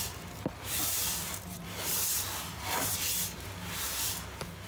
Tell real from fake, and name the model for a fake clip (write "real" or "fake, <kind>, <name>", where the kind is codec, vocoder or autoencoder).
fake, vocoder, BigVGAN v2